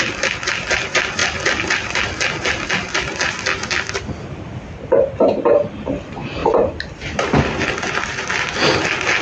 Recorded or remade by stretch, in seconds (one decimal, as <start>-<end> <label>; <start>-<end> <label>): 0.0-6.4 recorded; 6.4-8.2 remade; 8.2-9.2 recorded

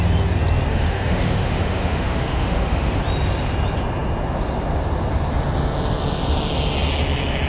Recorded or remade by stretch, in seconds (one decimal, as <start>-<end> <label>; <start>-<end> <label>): 0.0-0.7 recorded; 0.7-3.0 remade; 3.0-7.5 recorded